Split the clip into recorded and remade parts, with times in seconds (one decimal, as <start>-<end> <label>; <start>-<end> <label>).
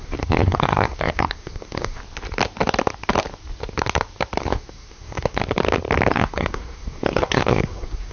0.0-2.0 remade; 2.0-4.4 recorded; 4.4-5.4 remade; 5.4-6.1 recorded; 6.1-8.1 remade